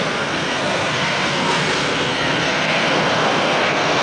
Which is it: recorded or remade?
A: remade